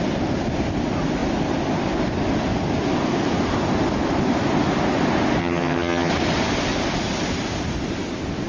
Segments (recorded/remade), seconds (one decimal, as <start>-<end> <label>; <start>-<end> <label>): 0.0-5.4 recorded; 5.4-6.1 remade; 6.1-8.5 recorded